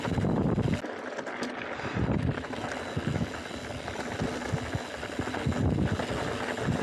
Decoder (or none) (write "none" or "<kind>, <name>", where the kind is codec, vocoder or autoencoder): none